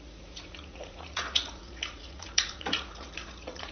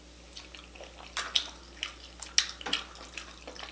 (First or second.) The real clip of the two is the second